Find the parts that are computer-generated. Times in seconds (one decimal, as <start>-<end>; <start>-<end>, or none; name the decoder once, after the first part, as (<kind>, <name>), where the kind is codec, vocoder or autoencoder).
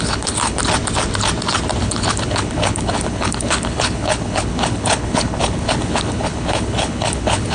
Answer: 0.0-0.6 (codec, HILCodec); 1.8-7.5